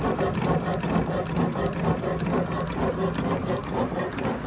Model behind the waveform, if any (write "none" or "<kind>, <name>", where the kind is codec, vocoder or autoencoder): none